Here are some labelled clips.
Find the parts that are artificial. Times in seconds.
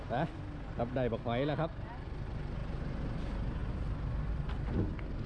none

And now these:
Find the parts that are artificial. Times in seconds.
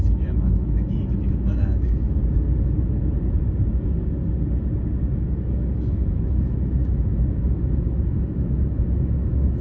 0.0-2.2; 5.4-9.6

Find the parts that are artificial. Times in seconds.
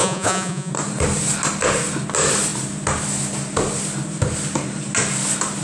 0.0-0.7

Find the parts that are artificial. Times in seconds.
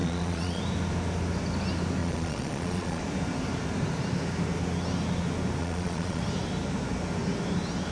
0.0-0.6; 2.0-3.0; 5.6-6.2